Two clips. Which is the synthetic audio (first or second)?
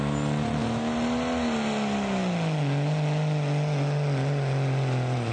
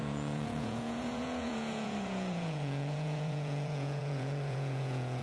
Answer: second